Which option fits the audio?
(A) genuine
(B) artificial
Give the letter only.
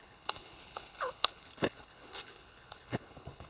B